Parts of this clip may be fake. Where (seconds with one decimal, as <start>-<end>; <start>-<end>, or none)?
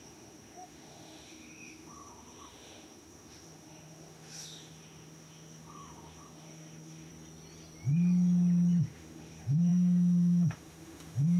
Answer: 0.0-7.1; 8.8-11.4